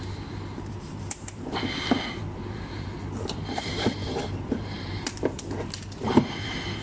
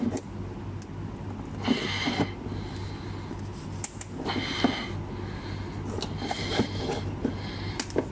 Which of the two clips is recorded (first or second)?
second